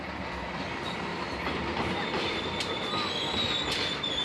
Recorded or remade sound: recorded